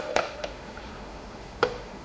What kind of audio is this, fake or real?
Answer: fake